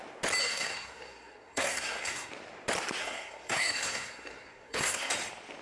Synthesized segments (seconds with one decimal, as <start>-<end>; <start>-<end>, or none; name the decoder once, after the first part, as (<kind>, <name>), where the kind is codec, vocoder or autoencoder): 0.4-2.3 (codec, SNAC); 3.0-5.1